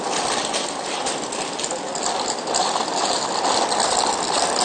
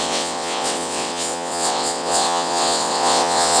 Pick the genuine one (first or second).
first